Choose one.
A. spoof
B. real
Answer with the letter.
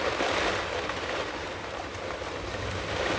B